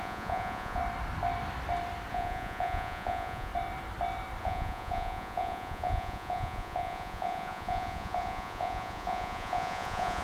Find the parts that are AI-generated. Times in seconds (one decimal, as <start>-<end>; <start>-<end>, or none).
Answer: 0.0-0.8; 2.1-3.5; 4.4-10.2